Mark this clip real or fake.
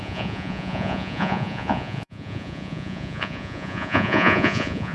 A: fake